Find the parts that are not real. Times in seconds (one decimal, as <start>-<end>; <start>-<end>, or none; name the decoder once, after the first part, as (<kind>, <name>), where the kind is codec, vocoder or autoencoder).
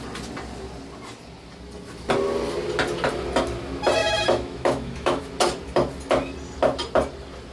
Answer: 4.0-5.2 (autoencoder, DAC-VAE)